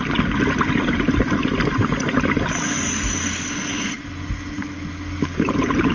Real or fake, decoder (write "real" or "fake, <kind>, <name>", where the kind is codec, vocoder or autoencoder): real